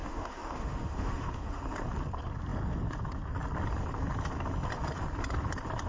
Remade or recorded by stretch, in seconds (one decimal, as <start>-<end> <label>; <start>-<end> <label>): 0.0-1.6 remade; 1.6-5.9 recorded